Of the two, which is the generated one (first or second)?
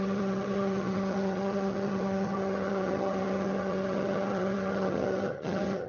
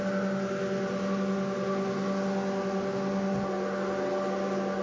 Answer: first